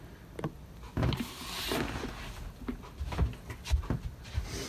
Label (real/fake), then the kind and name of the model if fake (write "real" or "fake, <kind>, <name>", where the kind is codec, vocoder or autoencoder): real